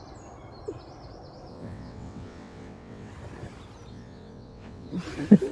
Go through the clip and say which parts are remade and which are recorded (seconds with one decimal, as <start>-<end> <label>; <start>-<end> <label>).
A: 0.0-1.5 recorded; 1.5-3.1 remade; 3.1-3.9 recorded; 3.9-4.9 remade; 4.9-5.5 recorded